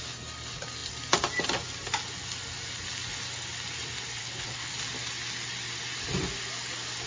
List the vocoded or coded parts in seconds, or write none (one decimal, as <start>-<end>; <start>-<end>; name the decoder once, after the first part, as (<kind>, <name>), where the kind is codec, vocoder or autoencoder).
4.2-4.7 (codec, HILCodec)